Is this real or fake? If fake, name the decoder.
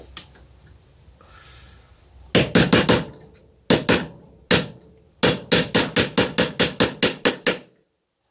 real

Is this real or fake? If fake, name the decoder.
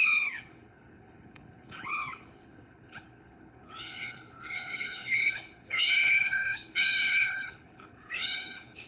fake, codec, HILCodec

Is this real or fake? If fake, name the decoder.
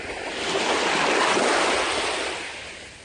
real